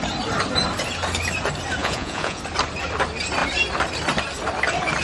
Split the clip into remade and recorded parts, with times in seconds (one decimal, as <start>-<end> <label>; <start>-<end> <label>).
0.0-1.8 recorded; 1.8-2.4 remade; 2.4-5.0 recorded